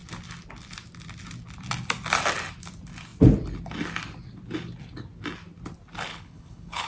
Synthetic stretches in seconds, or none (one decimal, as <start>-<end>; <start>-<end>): 6.1-6.9